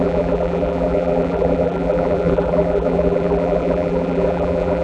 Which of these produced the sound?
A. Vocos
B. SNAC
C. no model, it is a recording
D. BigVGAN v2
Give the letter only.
D